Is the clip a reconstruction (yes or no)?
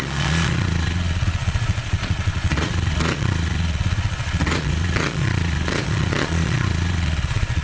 yes